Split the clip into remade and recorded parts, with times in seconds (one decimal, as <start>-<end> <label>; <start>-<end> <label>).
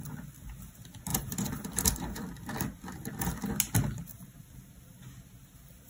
0.0-1.1 recorded; 1.1-3.5 remade; 3.5-4.1 recorded; 4.1-5.0 remade; 5.0-5.9 recorded